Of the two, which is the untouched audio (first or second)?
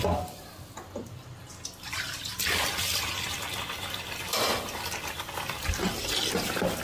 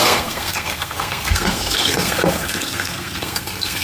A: first